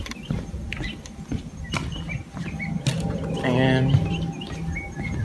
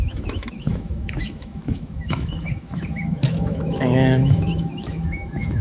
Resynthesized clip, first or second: second